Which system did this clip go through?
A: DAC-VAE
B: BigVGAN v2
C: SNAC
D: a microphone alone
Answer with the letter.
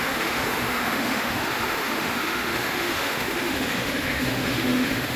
A